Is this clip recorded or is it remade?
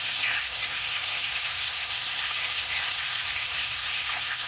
remade